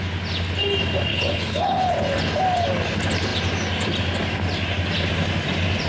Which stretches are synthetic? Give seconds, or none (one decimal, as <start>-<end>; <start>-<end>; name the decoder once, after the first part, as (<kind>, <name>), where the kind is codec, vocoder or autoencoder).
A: 1.1-1.9 (codec, HILCodec)